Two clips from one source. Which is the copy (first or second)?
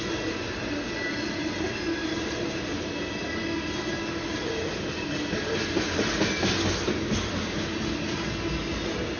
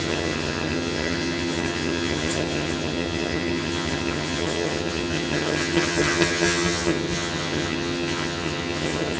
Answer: second